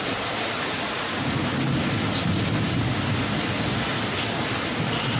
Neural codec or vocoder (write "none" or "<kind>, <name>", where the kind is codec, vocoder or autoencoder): none